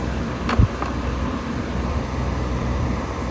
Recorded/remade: recorded